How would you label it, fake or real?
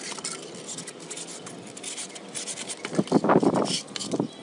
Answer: real